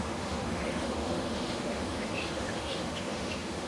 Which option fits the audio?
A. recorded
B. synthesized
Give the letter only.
B